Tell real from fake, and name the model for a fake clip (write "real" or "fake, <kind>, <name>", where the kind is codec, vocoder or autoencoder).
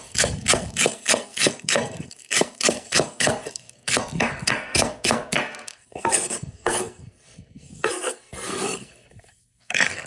fake, codec, SNAC